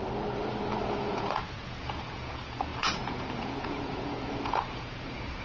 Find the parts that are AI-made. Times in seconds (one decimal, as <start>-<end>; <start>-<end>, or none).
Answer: 0.8-5.4

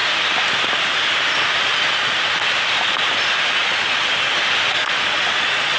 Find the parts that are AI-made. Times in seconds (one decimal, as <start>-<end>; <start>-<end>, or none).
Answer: 3.5-4.1; 4.8-5.8

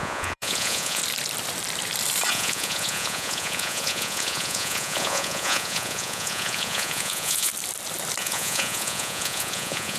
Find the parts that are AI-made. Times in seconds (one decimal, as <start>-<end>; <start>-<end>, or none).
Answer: 0.0-1.0; 2.3-7.5; 8.2-10.0

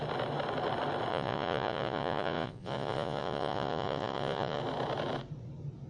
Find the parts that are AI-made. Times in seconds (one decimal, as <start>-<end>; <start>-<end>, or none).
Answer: 1.1-4.6

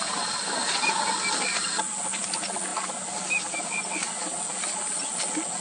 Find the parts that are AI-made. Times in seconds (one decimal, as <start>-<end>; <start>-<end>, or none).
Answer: none